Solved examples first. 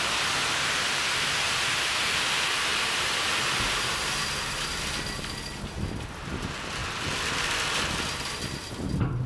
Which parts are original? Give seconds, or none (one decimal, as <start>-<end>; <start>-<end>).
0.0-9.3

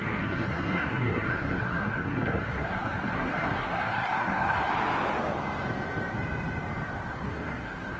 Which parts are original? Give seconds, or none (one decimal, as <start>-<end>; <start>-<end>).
4.7-7.1

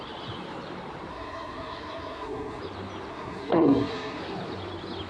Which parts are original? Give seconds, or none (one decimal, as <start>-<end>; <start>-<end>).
0.0-1.1; 2.6-3.1; 4.2-5.1

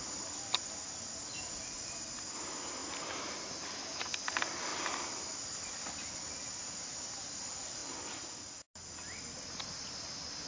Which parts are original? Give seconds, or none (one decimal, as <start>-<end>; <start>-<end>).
0.0-10.5